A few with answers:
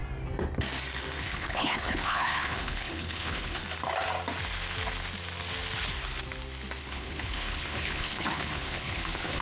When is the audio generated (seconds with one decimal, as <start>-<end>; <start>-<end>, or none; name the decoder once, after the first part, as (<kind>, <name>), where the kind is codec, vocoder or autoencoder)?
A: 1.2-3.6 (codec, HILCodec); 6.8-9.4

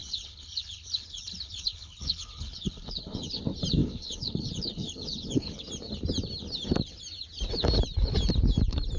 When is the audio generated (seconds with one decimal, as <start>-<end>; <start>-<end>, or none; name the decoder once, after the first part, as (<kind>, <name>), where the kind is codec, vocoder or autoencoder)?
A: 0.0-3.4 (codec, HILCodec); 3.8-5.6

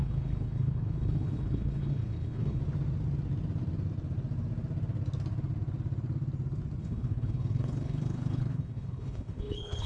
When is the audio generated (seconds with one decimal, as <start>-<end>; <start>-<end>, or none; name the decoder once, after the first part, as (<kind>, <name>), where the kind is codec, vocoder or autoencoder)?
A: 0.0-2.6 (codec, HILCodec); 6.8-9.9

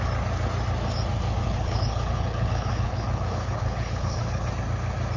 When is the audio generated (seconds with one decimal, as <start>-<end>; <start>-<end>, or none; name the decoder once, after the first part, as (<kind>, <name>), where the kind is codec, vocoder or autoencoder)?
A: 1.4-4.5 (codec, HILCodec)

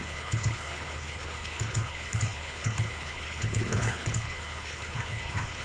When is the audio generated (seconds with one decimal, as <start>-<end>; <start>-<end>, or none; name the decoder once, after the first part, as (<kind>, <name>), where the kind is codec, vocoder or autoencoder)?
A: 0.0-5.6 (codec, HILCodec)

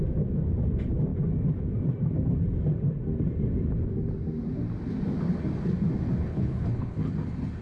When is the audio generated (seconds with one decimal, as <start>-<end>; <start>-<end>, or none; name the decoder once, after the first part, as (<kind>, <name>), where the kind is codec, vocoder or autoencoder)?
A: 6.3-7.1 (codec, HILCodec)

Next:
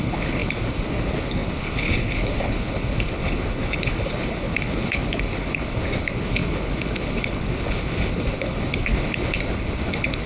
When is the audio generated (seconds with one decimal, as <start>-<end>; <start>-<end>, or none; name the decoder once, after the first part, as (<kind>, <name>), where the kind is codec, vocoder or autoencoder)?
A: 0.0-10.3 (codec, HILCodec)

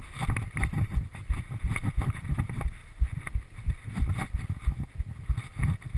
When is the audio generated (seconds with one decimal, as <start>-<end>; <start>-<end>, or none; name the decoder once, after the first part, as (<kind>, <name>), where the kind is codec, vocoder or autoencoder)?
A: none